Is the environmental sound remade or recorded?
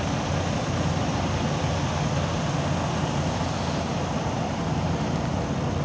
recorded